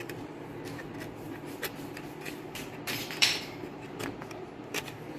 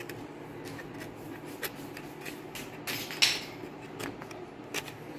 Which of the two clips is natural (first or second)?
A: second